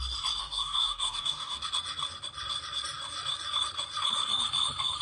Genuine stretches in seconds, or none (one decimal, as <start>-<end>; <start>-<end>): 0.0-0.4; 1.6-5.0